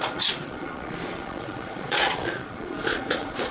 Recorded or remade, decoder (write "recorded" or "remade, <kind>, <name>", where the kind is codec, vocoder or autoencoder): remade, vocoder, Vocos